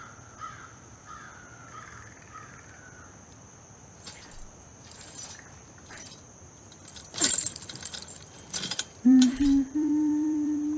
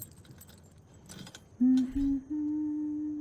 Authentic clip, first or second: second